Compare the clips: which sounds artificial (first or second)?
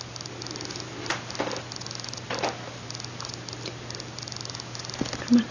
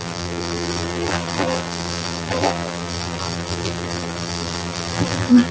second